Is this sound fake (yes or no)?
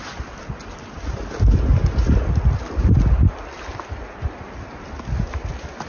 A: no